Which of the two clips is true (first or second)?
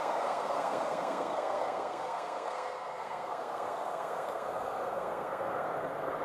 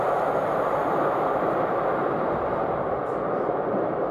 second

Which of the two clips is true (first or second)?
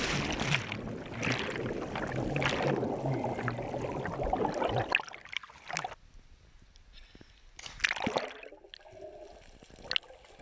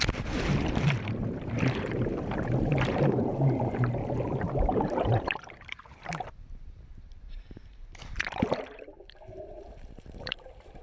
first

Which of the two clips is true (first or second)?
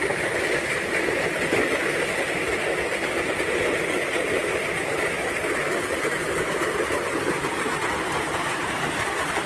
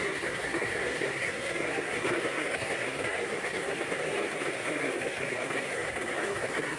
first